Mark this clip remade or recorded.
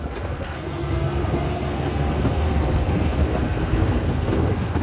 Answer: remade